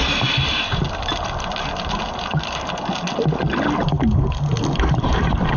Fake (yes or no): no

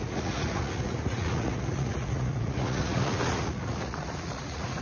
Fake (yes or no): yes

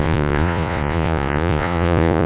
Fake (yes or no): yes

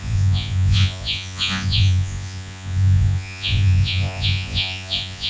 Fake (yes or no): yes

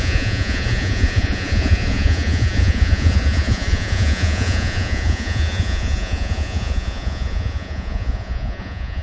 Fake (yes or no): yes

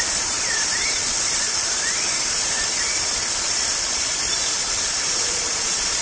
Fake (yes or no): yes